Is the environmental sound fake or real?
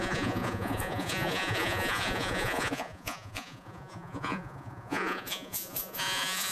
fake